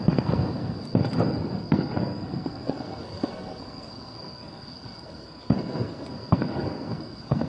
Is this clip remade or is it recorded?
remade